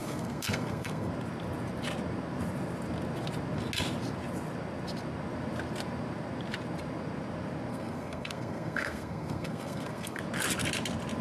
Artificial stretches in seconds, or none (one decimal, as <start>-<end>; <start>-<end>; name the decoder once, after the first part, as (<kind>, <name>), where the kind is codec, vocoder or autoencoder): 0.0-1.1 (codec, SNAC); 7.7-10.2